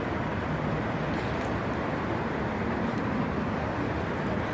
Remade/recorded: recorded